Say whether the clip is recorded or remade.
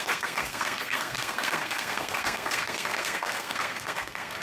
remade